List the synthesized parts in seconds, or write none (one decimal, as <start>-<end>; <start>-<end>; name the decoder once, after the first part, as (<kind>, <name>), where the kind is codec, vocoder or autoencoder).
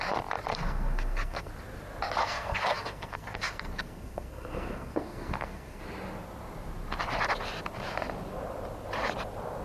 0.5-1.5 (codec, SNAC); 2.2-5.8